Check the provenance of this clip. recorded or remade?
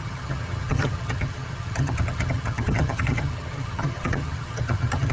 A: remade